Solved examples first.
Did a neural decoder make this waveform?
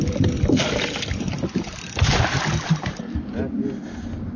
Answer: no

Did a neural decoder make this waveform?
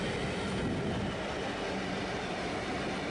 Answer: no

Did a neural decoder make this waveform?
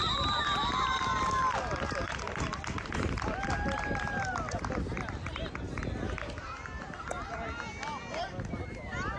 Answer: no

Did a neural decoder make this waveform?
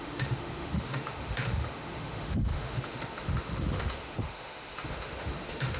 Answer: yes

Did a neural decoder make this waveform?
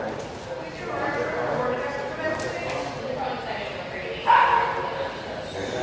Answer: no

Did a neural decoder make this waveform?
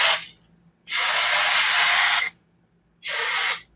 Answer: no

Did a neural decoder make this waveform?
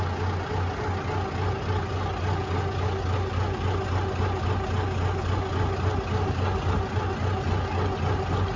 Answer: no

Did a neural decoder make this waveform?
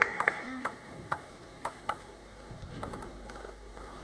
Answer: yes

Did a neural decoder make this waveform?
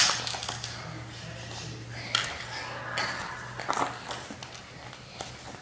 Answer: no